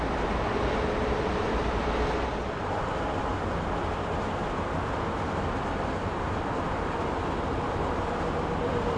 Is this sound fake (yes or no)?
no